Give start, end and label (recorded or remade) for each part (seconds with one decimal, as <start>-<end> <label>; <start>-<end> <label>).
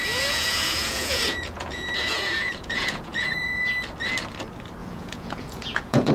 0.0-3.7 remade; 3.7-4.8 recorded; 4.8-6.1 remade